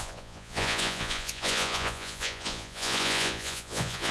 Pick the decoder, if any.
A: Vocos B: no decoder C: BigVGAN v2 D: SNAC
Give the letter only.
A